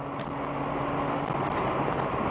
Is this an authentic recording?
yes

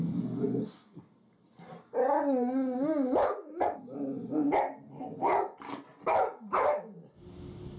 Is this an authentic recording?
yes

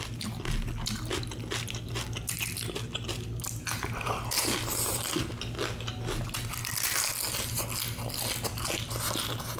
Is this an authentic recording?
yes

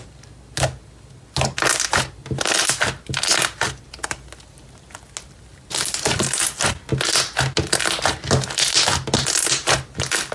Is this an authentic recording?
yes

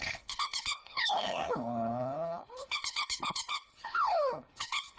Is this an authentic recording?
no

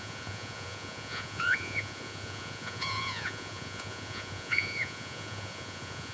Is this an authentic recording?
no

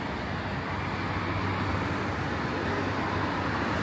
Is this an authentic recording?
yes